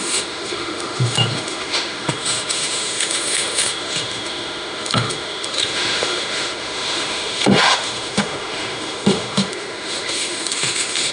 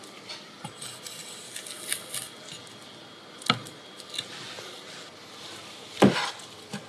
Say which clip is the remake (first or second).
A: first